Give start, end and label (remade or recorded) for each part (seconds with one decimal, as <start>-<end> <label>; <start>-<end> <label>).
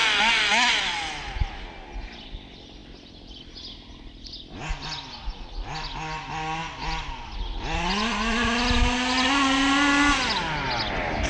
0.0-11.3 recorded